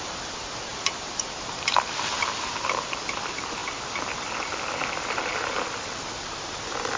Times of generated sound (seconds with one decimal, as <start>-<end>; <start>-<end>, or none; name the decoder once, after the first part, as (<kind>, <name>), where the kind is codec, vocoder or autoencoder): 0.0-3.6 (vocoder, BigVGAN v2); 5.1-7.0

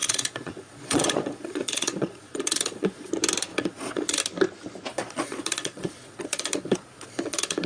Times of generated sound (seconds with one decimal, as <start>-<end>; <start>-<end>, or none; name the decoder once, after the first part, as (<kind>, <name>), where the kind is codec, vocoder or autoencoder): 0.0-3.1 (vocoder, Vocos); 3.5-4.2; 4.9-7.7

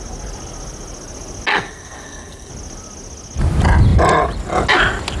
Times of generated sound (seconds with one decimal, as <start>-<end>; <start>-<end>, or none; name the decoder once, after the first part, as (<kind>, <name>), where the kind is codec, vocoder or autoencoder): 1.5-2.5 (codec, SNAC)

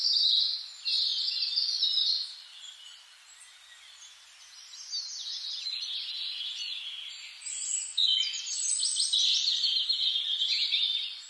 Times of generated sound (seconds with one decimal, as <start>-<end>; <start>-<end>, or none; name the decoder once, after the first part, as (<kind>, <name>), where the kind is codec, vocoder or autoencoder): 5.2-6.8 (vocoder, Vocos); 7.9-8.4

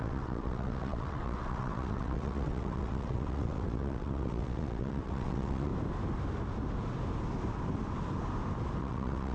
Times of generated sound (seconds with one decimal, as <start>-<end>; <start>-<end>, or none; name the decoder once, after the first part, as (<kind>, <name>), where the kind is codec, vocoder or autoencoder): 0.0-5.7 (vocoder, WaveNeXt); 8.8-9.3

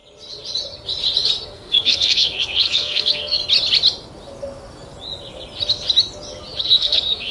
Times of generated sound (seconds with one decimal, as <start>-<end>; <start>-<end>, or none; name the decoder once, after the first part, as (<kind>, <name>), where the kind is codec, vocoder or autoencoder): 1.5-3.4 (codec, SNAC); 6.6-7.3